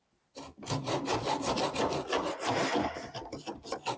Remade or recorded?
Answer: remade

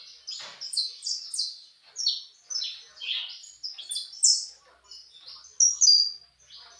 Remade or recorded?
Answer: recorded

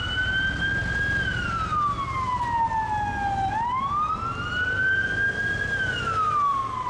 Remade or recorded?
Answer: recorded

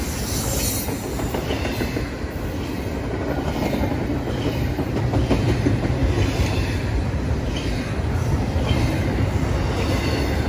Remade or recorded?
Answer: recorded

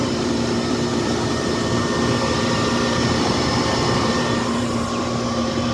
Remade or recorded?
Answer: remade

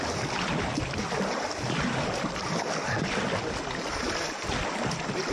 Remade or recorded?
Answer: recorded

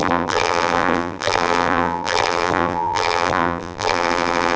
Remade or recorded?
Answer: remade